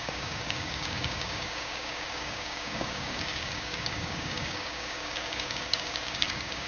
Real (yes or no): no